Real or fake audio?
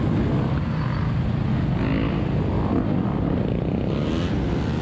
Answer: real